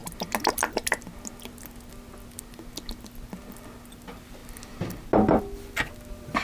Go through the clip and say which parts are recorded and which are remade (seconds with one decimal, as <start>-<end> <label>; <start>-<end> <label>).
0.0-6.4 recorded